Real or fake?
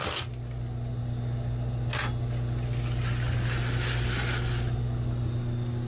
real